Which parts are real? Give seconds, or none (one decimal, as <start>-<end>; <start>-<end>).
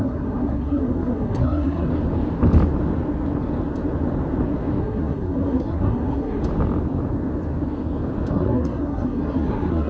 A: 1.9-4.8; 6.4-8.3